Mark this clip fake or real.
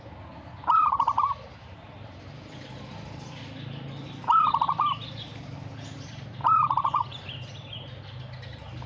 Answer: real